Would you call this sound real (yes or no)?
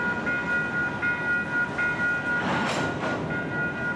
yes